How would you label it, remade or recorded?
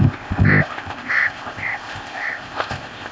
remade